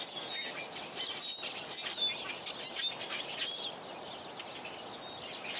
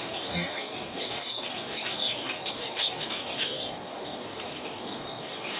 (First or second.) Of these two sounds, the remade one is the second